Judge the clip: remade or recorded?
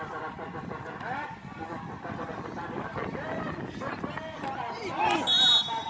recorded